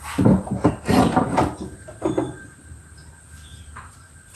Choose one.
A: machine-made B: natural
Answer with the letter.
B